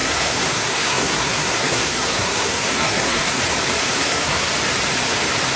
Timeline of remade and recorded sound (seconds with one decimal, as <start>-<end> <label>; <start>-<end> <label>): 0.0-3.4 remade; 3.4-3.8 recorded; 3.8-4.5 remade; 4.5-5.6 recorded